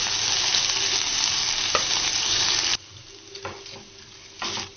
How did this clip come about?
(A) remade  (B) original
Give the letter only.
B